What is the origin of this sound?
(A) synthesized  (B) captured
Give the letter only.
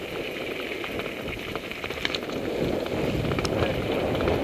B